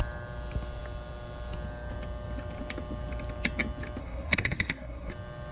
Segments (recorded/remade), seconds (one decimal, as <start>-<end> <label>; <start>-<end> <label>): 0.0-4.0 recorded; 4.0-5.1 remade; 5.1-5.5 recorded